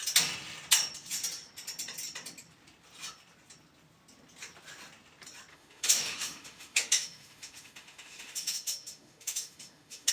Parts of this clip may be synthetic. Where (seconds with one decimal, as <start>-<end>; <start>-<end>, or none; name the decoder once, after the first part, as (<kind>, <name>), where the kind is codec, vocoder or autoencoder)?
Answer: 5.5-10.1 (autoencoder, DAC-VAE)